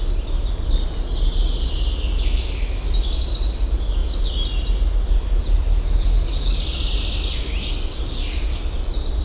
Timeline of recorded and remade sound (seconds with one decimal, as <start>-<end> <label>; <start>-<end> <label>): 0.0-7.6 recorded; 7.6-8.6 remade; 8.6-9.2 recorded